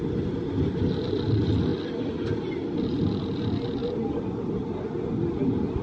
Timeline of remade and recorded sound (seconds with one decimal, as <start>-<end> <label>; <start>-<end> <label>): 0.0-5.8 recorded